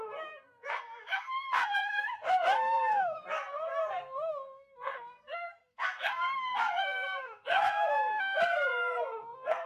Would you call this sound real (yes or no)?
no